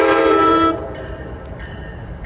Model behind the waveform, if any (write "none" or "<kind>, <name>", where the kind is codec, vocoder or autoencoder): vocoder, BigVGAN v2